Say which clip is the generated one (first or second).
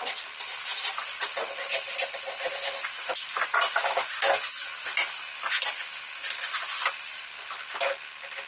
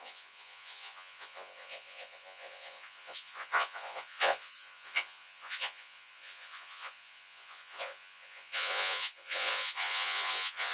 second